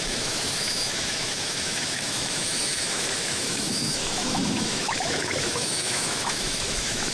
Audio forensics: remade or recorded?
remade